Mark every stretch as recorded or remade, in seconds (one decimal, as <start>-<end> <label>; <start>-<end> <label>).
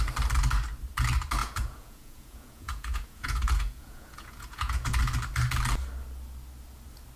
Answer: 0.0-1.4 recorded; 1.4-5.0 remade; 5.0-7.2 recorded